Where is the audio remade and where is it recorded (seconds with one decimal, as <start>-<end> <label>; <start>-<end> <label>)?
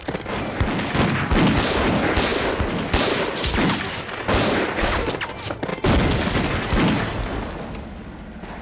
0.0-8.6 recorded